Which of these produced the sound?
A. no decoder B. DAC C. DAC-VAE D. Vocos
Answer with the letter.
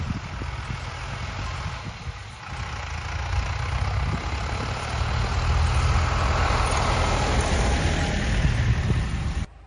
A